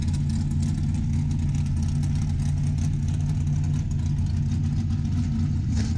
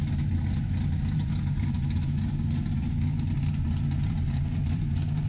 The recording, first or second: first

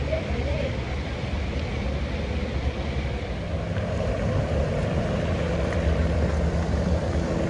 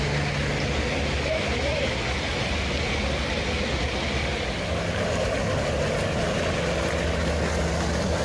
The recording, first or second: second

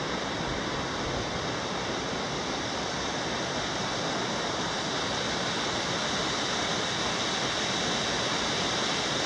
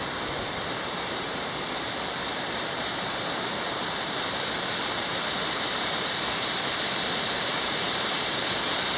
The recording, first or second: first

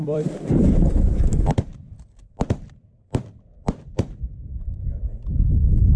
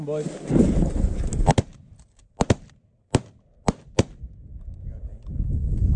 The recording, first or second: second